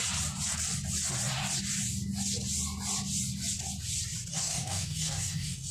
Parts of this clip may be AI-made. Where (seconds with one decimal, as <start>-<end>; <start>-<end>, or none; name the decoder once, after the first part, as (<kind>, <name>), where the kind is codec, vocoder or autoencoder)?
4.3-5.7 (codec, DAC)